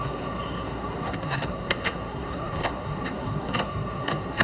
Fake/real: fake